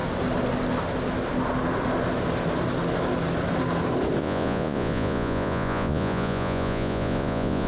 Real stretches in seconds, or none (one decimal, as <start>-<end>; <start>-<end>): 0.0-4.2